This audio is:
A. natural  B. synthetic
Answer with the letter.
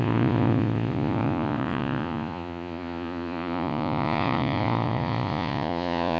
B